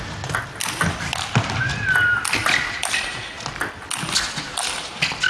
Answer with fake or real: real